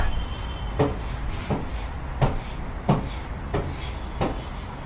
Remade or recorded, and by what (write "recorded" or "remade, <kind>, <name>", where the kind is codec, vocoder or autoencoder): recorded